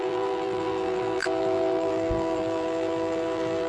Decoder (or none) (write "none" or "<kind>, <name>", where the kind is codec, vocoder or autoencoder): vocoder, BigVGAN v2